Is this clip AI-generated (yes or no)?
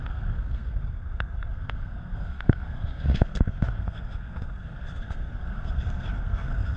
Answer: yes